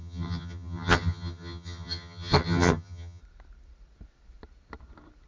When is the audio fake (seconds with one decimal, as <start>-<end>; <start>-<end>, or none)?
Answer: 0.0-3.2